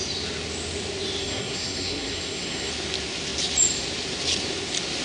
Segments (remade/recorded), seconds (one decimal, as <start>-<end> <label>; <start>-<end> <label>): 0.0-1.2 recorded; 1.2-2.7 remade; 2.7-5.0 recorded